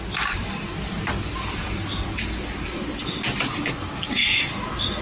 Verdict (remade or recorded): recorded